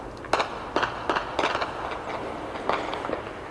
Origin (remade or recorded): recorded